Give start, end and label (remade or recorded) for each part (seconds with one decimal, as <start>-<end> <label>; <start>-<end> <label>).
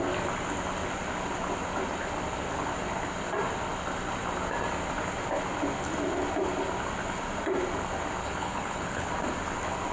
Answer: 0.0-8.2 recorded; 8.2-9.1 remade; 9.1-9.9 recorded